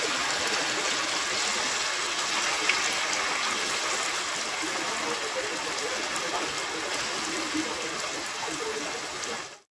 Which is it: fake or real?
real